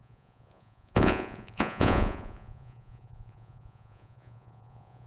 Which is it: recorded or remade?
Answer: remade